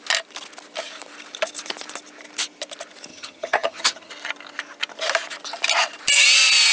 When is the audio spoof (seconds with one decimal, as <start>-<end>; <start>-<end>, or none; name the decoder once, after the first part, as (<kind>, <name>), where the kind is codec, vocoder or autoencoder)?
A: 3.1-4.1 (vocoder, HiFi-GAN)